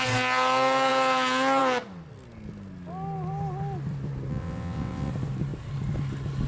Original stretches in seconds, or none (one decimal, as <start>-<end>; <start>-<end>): 0.0-4.3; 5.1-6.5